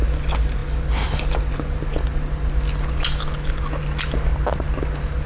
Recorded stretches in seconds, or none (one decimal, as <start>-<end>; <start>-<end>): 0.0-5.3